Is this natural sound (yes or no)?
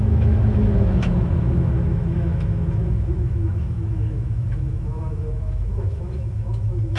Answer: no